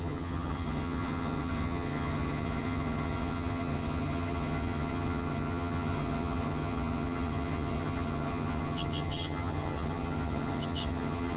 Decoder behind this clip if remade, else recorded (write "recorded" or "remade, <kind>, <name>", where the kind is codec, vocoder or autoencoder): remade, vocoder, HiFi-GAN